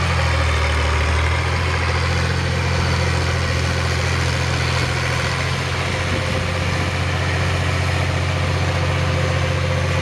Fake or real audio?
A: real